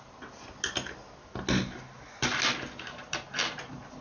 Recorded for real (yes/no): yes